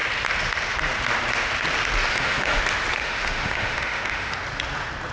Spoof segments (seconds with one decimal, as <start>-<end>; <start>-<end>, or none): 2.1-2.6; 3.0-4.3